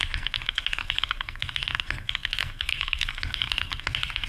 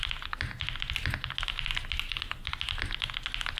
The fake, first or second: first